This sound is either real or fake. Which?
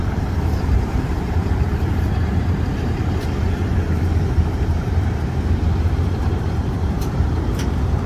fake